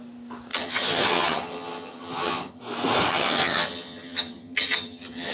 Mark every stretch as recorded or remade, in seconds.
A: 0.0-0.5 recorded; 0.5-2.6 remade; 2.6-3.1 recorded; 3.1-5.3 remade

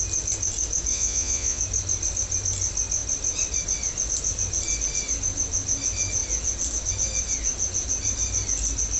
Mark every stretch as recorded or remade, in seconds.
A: 0.0-0.9 recorded; 0.9-1.6 remade; 1.6-9.0 recorded